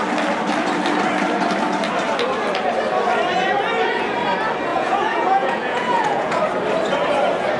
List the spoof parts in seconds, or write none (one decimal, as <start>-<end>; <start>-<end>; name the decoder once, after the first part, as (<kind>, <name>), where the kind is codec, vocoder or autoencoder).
4.7-6.4 (vocoder, Vocos)